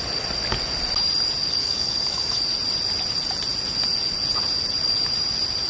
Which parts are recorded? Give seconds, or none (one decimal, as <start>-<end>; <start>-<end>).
0.0-1.6; 2.4-5.7